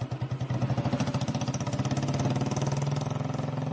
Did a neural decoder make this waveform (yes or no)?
no